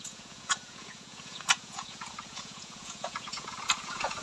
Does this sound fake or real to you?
fake